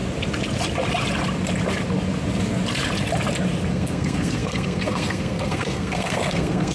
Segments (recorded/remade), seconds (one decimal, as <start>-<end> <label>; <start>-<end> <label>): 0.0-3.7 recorded; 3.7-6.7 remade